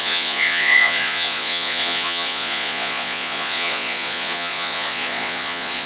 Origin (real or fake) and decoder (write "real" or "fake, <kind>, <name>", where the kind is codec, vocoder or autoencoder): fake, vocoder, Vocos